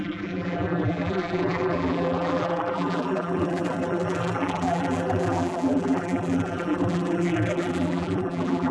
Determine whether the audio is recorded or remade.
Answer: remade